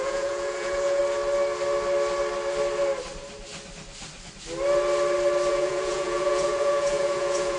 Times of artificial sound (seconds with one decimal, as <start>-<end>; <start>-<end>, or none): 0.0-1.0; 5.5-7.6